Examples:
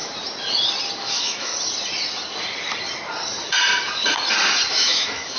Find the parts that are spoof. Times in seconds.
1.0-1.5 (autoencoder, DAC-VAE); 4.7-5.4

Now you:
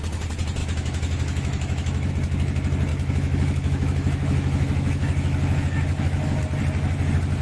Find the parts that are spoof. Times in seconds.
0.6-2.1 (autoencoder, DAC-VAE); 2.9-6.4

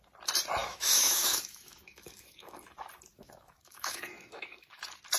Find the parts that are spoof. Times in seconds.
0.6-2.6 (autoencoder, DAC-VAE); 3.1-4.8

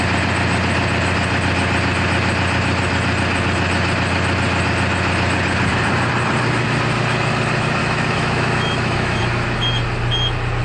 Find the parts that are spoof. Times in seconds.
7.8-9.2 (autoencoder, DAC-VAE)

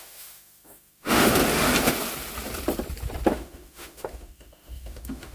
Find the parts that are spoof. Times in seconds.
0.0-1.4 (autoencoder, DAC-VAE); 3.3-5.3

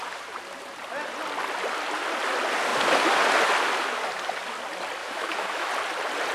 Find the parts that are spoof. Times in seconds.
5.0-5.7 (autoencoder, DAC-VAE)